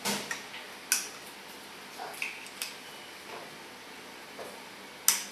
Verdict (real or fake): real